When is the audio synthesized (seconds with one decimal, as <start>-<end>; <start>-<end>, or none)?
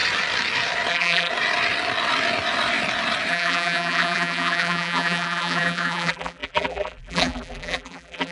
0.9-1.3; 3.3-8.3